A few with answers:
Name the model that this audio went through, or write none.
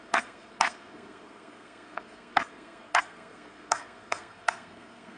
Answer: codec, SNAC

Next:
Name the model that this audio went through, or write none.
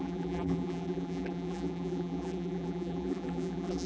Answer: vocoder, BigVGAN v2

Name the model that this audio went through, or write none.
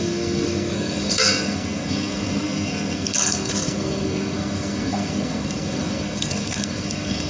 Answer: codec, SNAC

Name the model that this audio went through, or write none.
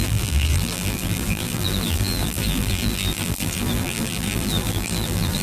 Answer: vocoder, BigVGAN v2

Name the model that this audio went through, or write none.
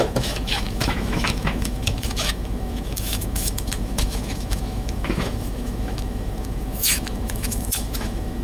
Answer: autoencoder, DAC-VAE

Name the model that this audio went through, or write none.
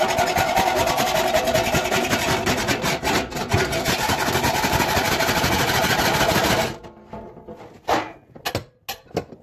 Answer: none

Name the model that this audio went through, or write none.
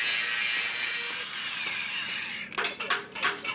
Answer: none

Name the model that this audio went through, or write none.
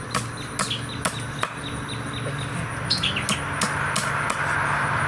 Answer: none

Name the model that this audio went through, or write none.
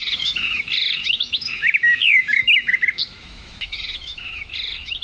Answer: autoencoder, DAC-VAE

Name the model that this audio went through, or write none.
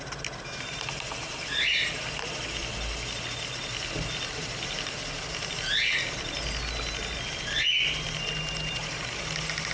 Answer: none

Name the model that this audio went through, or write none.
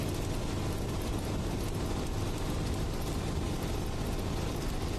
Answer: none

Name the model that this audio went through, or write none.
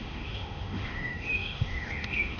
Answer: autoencoder, DAC-VAE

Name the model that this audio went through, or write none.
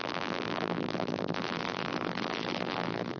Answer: vocoder, BigVGAN v2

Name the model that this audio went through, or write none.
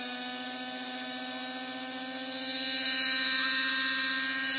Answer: none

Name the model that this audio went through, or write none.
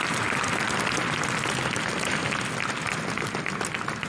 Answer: none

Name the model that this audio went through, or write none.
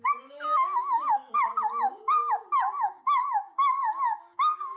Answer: codec, DAC